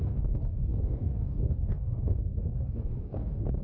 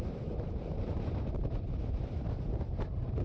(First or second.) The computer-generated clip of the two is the first